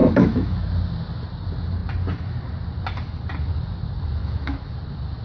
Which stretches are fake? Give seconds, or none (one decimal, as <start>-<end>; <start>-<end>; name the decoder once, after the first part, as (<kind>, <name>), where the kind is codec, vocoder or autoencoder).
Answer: 0.0-0.7 (autoencoder, DAC-VAE); 4.2-4.7